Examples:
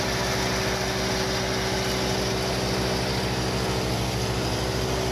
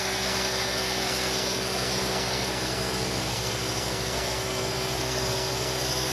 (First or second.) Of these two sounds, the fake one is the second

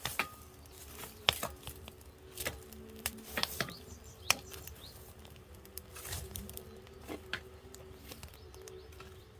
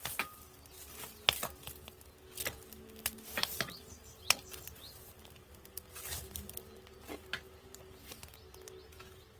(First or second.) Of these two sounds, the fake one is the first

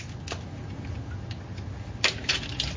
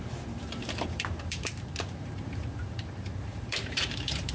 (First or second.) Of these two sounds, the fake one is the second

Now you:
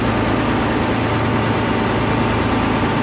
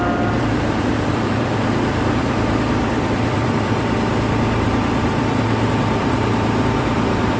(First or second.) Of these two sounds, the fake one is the second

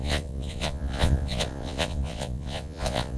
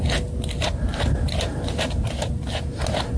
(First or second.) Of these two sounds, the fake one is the first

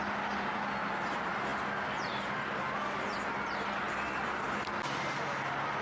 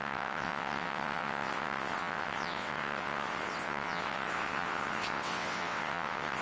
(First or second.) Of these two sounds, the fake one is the second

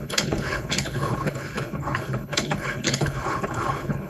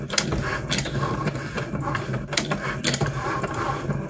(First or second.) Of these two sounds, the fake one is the first